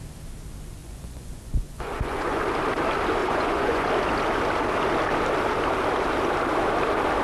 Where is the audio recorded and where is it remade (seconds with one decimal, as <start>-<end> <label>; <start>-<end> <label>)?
0.0-0.8 recorded; 0.8-2.4 remade; 2.4-3.2 recorded; 3.2-3.9 remade; 3.9-7.2 recorded